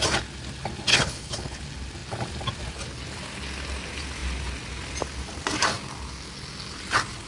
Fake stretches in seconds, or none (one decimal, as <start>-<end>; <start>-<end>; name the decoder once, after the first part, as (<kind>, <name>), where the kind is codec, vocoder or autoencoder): 0.9-1.6 (codec, HILCodec)